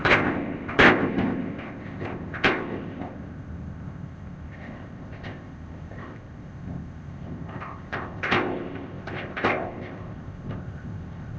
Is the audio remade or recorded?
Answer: remade